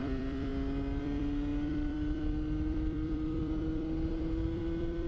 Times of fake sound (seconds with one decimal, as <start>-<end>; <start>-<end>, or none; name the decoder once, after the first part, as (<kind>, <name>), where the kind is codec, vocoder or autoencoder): 0.0-0.5 (vocoder, BigVGAN v2); 1.0-5.1